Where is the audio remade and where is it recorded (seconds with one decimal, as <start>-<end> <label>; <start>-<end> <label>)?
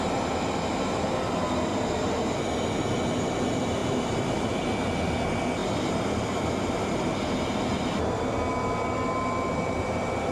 0.0-1.7 recorded; 1.7-2.2 remade; 2.2-3.8 recorded; 3.8-4.5 remade; 4.5-10.3 recorded